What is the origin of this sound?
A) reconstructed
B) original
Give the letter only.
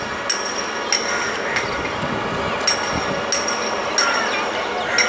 B